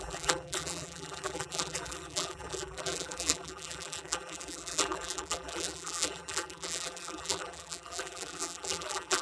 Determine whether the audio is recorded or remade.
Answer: remade